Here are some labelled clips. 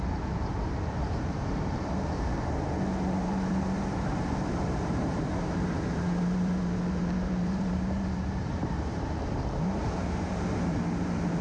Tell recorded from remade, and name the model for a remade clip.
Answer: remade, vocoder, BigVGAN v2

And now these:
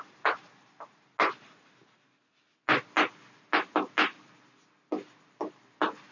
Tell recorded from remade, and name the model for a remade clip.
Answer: recorded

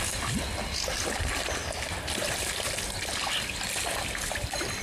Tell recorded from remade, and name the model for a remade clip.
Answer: recorded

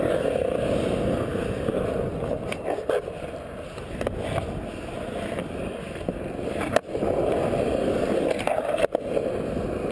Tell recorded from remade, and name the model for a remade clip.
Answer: recorded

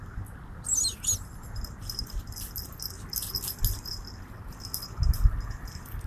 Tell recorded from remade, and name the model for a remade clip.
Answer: recorded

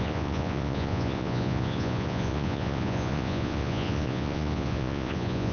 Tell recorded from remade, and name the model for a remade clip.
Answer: remade, vocoder, Vocos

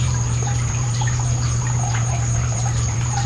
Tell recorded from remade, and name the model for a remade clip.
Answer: remade, vocoder, BigVGAN v2